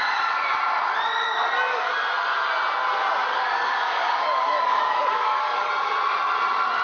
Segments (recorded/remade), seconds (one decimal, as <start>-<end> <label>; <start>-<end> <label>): 0.0-3.3 recorded; 3.3-5.7 remade; 5.7-6.8 recorded